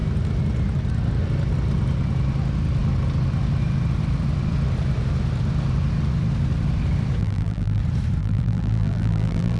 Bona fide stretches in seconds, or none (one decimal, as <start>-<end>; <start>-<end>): 0.0-7.2; 7.8-8.2